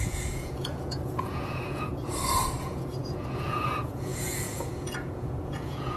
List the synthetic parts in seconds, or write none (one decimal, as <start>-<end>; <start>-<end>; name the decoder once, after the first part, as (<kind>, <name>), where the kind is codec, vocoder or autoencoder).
0.0-1.9 (vocoder, Vocos); 2.6-6.0